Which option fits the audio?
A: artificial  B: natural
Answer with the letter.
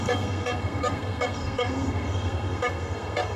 A